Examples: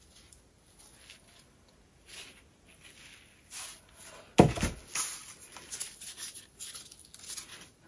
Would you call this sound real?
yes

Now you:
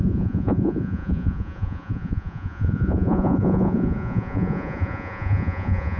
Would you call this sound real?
no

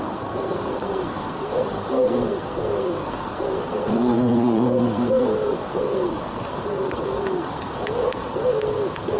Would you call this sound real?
no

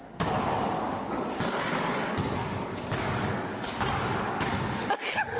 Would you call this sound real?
no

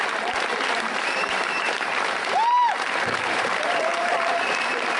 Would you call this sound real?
no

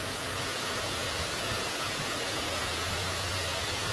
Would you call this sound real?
no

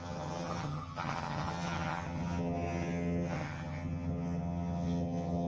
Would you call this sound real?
no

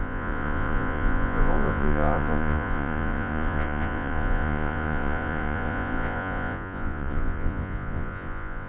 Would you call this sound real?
no